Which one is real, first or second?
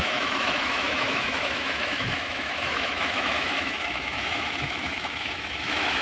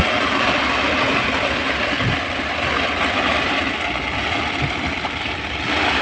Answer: second